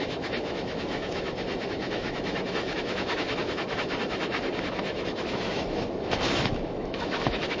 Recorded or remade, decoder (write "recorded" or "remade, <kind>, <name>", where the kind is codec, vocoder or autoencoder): remade, autoencoder, DAC-VAE